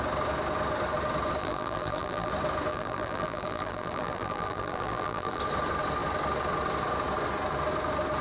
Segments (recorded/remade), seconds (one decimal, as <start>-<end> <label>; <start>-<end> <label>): 0.0-1.4 recorded; 1.4-2.3 remade; 2.3-2.7 recorded; 2.7-5.4 remade; 5.4-8.2 recorded